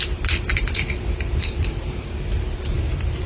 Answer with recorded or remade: remade